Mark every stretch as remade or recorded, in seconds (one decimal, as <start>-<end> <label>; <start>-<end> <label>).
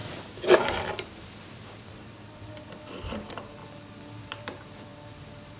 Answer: 0.0-3.6 remade; 3.6-4.2 recorded; 4.2-4.9 remade; 4.9-5.6 recorded